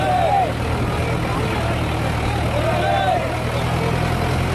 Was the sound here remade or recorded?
recorded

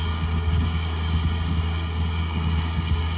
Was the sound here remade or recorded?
remade